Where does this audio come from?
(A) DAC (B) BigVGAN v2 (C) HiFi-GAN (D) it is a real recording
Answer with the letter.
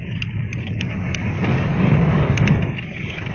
A